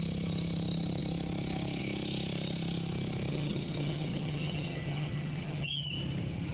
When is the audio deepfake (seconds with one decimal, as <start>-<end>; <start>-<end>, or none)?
3.3-5.9